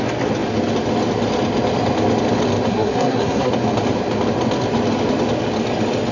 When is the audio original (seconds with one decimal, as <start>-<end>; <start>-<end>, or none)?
0.0-2.7; 3.5-6.1